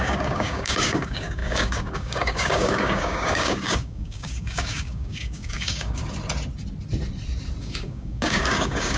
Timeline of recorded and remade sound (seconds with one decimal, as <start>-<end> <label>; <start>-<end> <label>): 0.0-6.0 remade; 6.0-7.6 recorded; 7.6-9.0 remade